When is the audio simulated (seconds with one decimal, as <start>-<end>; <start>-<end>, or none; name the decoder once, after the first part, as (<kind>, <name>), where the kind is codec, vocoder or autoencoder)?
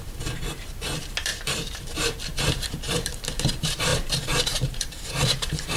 0.0-5.8 (vocoder, BigVGAN v2)